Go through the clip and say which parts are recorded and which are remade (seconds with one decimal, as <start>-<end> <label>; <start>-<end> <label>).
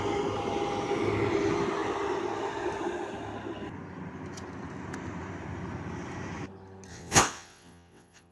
0.0-6.9 recorded; 6.9-8.3 remade